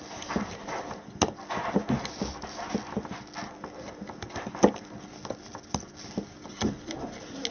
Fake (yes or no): no